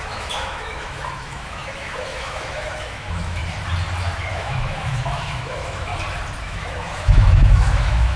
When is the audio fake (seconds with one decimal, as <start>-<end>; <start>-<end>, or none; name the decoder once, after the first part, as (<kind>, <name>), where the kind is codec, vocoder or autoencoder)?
0.0-3.4 (autoencoder, DAC-VAE); 4.3-5.9; 6.4-8.2